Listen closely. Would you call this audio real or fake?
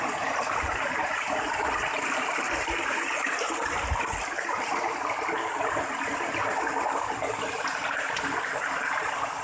fake